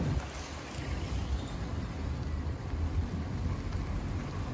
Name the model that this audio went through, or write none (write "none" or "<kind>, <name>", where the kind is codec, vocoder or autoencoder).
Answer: none